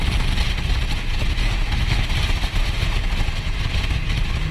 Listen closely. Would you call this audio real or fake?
real